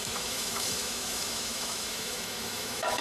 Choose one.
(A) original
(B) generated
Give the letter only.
B